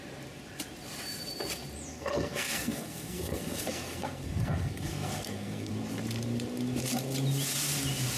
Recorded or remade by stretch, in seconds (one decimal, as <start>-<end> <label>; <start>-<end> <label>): 0.0-1.9 recorded; 1.9-5.7 remade; 5.7-8.2 recorded

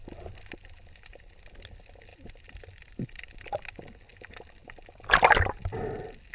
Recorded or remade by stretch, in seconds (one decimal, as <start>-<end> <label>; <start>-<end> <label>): 0.0-2.1 recorded; 2.1-3.2 remade; 3.2-4.1 recorded; 4.1-5.2 remade; 5.2-6.3 recorded

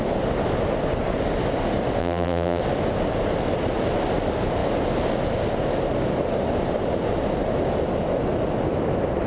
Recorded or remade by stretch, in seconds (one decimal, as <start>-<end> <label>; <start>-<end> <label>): 0.0-2.0 recorded; 2.0-2.6 remade; 2.6-9.3 recorded